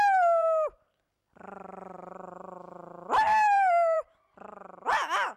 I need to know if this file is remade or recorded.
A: remade